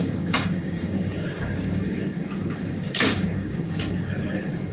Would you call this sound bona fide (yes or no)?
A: no